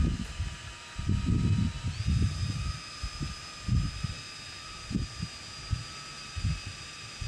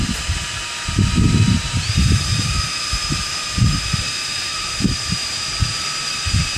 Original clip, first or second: first